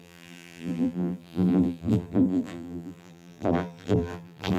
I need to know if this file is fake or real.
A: fake